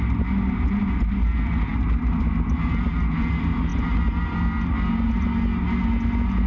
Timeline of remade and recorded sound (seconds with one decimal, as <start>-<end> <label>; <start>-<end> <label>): 0.0-6.5 recorded